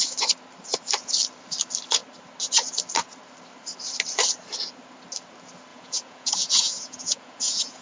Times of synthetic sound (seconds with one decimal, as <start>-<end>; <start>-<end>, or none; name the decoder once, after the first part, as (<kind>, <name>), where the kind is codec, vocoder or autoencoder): 5.7-7.8 (vocoder, Vocos)